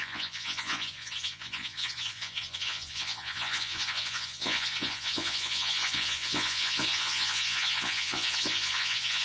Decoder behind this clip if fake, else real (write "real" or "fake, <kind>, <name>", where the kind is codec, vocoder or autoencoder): fake, vocoder, Vocos